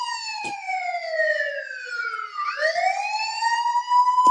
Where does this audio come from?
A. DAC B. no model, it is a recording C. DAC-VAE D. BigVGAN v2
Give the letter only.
B